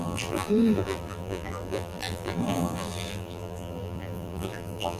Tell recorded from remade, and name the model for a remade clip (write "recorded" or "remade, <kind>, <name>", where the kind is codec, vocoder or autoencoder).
remade, vocoder, BigVGAN v2